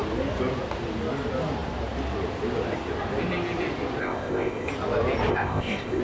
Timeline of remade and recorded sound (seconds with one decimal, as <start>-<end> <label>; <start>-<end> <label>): 0.0-4.0 recorded; 4.0-4.7 remade; 4.7-5.3 recorded; 5.3-6.0 remade